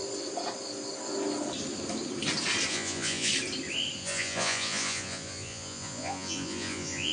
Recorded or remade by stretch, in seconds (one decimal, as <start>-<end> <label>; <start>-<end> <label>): 0.0-2.7 recorded; 2.7-3.3 remade; 3.3-4.0 recorded; 4.0-7.1 remade